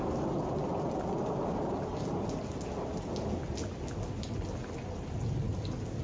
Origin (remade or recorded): recorded